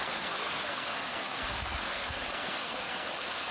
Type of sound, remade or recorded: remade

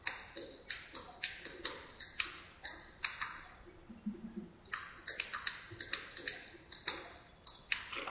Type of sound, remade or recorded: recorded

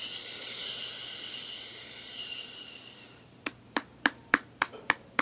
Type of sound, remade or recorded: remade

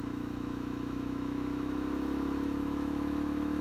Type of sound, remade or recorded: remade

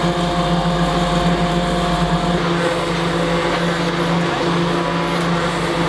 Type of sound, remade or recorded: recorded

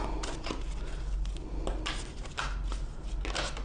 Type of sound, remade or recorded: recorded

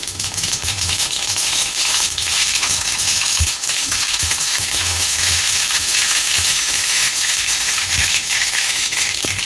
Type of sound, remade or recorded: remade